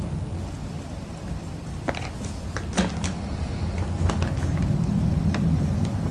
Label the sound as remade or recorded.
recorded